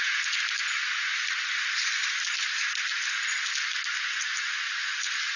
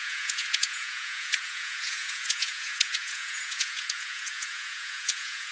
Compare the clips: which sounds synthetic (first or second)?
second